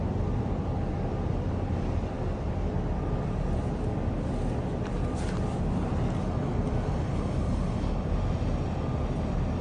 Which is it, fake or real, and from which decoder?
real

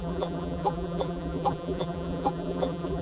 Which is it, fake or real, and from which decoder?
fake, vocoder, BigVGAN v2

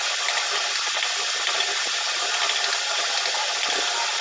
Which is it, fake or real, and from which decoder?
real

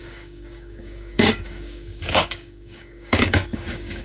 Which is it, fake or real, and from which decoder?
fake, codec, DAC